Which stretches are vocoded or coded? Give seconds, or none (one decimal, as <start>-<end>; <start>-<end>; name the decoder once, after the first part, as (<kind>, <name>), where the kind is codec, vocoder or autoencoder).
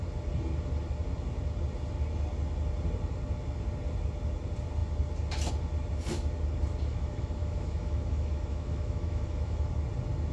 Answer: 6.9-9.7 (autoencoder, DAC-VAE)